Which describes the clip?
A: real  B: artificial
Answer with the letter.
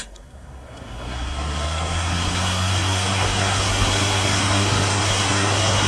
B